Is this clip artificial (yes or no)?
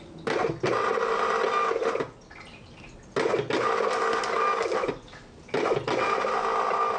no